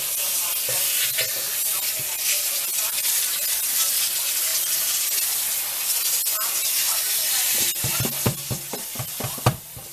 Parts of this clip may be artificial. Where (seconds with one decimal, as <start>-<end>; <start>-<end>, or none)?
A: none